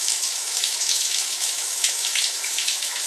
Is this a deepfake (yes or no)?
yes